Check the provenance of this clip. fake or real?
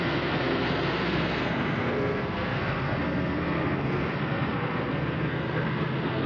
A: fake